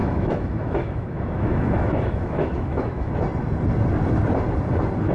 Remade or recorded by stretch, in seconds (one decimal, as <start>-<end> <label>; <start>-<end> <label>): 0.0-3.1 remade; 3.1-5.1 recorded

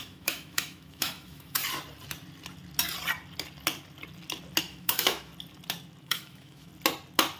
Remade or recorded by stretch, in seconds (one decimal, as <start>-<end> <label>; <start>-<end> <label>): 0.0-1.6 remade; 1.6-4.6 recorded; 4.6-5.3 remade; 5.3-6.0 recorded; 6.0-6.7 remade; 6.7-7.4 recorded

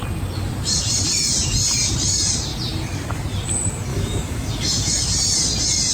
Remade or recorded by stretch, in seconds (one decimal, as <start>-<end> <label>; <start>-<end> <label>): 0.0-3.9 recorded; 3.9-5.0 remade; 5.0-5.9 recorded

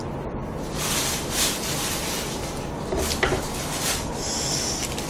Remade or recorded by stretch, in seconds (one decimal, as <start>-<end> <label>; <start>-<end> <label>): 0.0-5.1 recorded

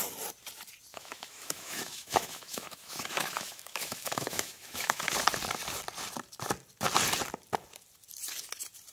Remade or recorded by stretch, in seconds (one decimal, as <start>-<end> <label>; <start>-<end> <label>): 0.0-0.9 recorded; 0.9-5.1 remade; 5.1-8.9 recorded

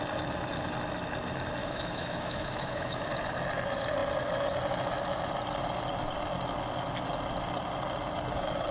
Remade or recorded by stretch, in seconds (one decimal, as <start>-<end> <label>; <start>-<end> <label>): 0.0-1.6 recorded; 1.6-3.0 remade; 3.0-8.7 recorded

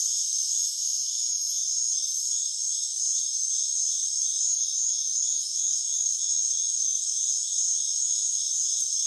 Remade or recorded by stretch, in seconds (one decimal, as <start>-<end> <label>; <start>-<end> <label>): 0.0-5.4 recorded; 5.4-7.2 remade; 7.2-9.1 recorded